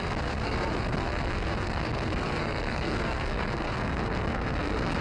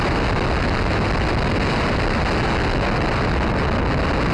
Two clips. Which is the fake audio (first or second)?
first